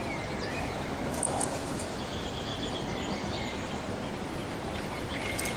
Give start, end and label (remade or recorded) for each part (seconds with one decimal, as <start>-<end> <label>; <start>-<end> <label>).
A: 0.0-0.5 recorded; 0.5-2.5 remade; 2.5-5.6 recorded